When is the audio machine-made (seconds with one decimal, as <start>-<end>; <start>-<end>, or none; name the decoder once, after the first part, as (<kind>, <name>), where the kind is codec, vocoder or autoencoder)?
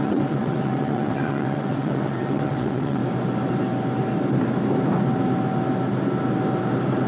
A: 0.0-3.0 (vocoder, WaveNeXt)